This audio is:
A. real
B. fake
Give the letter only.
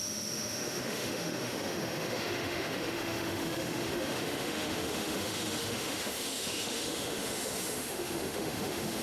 B